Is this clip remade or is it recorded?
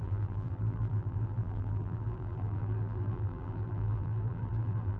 remade